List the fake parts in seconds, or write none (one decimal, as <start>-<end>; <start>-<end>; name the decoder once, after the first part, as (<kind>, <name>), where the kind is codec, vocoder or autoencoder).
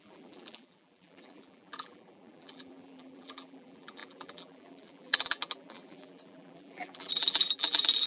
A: 0.0-8.1 (vocoder, BigVGAN v2)